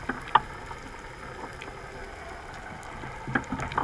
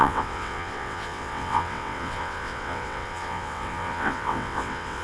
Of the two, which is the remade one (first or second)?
second